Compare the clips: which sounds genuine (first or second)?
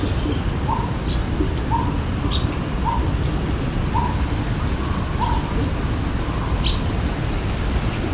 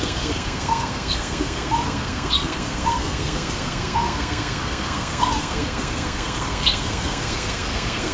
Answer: first